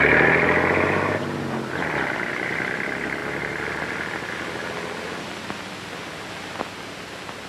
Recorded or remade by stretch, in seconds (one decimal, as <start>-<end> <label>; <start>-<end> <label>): 0.0-7.5 recorded